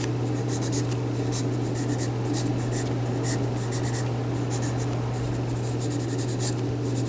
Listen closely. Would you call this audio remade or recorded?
recorded